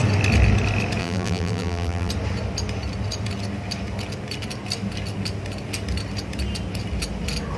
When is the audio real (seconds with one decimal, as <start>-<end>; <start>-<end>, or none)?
0.0-1.0; 2.1-7.6